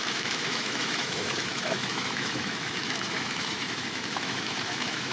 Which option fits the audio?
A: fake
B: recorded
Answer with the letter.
A